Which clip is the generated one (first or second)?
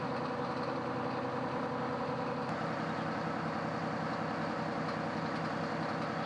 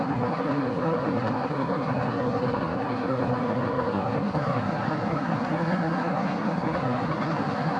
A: second